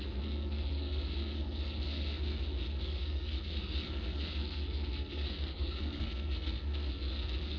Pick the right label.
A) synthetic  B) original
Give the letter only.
A